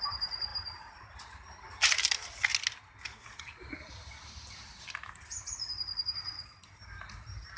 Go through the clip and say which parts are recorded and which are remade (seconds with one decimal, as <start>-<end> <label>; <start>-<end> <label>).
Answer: 0.0-7.6 recorded

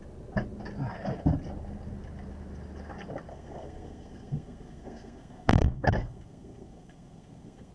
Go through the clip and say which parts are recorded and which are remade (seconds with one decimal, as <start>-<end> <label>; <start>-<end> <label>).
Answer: 0.0-3.3 recorded; 3.3-7.7 remade

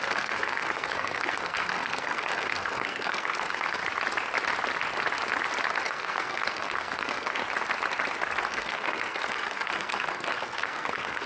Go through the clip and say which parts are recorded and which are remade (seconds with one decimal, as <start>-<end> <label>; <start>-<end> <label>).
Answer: 0.0-3.8 remade; 3.8-5.8 recorded; 5.8-7.4 remade; 7.4-8.5 recorded; 8.5-11.3 remade

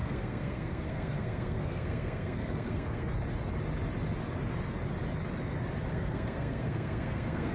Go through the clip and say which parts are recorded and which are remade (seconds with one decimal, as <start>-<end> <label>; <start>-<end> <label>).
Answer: 0.0-3.1 remade; 3.1-5.9 recorded; 5.9-7.5 remade